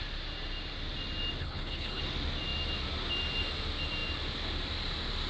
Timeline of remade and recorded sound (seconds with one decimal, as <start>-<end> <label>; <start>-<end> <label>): 0.0-1.4 recorded; 1.4-2.0 remade; 2.0-5.3 recorded